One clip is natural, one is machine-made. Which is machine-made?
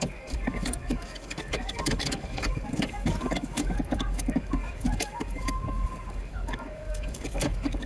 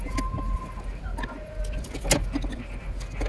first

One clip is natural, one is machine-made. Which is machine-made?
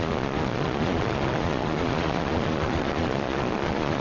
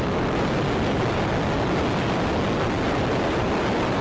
first